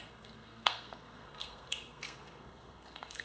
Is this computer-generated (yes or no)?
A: yes